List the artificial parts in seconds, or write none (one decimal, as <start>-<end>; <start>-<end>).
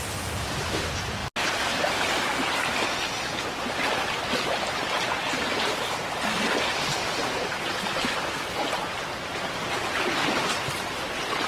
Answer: none